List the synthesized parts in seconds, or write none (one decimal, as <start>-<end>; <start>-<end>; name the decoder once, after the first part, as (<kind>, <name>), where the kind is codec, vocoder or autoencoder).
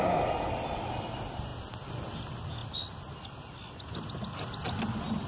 none